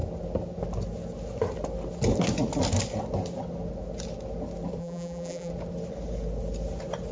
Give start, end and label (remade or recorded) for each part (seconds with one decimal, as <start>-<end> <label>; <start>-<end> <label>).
0.0-4.8 recorded; 4.8-5.5 remade; 5.5-7.1 recorded